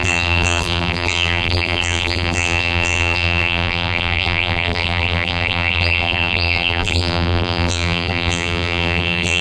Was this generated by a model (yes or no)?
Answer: yes